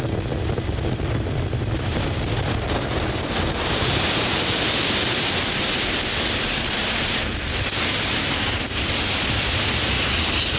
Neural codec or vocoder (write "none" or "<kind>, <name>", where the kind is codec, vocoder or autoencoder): none